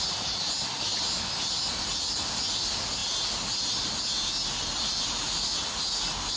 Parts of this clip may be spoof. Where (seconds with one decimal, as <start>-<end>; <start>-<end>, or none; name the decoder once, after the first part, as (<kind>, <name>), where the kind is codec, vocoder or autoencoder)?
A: none

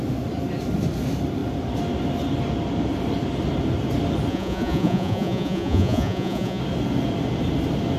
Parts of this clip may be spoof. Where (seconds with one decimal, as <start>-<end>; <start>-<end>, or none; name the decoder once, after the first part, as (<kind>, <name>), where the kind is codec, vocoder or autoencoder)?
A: 4.3-6.6 (vocoder, Vocos)